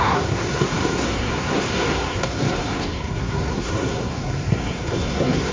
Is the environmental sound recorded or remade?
remade